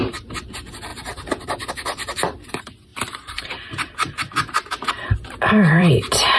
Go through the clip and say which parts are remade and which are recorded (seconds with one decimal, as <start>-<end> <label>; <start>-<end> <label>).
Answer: 0.0-6.4 remade